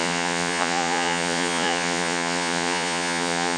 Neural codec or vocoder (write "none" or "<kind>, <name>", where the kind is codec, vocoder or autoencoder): vocoder, Vocos